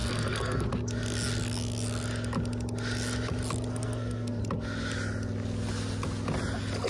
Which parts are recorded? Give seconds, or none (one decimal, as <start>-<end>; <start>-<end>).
0.7-3.7; 4.4-6.9